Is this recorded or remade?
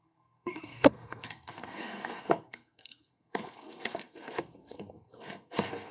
remade